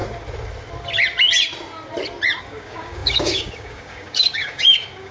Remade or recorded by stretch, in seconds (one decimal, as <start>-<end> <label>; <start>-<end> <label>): 0.0-2.4 recorded; 2.4-5.1 remade